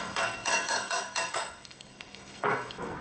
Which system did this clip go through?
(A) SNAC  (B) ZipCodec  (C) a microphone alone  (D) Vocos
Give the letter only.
A